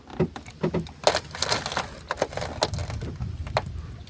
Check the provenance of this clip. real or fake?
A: real